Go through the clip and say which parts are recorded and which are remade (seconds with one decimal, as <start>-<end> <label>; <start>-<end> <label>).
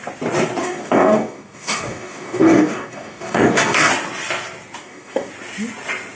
0.0-0.6 recorded; 0.6-3.9 remade; 3.9-4.8 recorded; 4.8-5.3 remade; 5.3-6.2 recorded